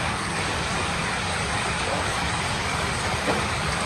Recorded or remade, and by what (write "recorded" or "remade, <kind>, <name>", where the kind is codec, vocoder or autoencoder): remade, codec, DAC